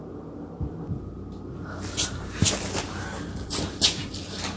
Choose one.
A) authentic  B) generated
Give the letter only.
A